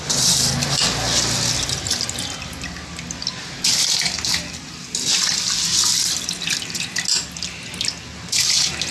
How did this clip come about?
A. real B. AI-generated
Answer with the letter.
A